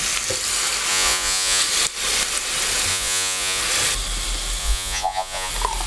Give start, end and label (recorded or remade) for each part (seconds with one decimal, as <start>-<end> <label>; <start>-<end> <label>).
0.0-0.9 recorded; 0.9-1.6 remade; 1.6-2.9 recorded; 2.9-3.6 remade; 3.6-4.6 recorded; 4.6-5.5 remade; 5.5-5.9 recorded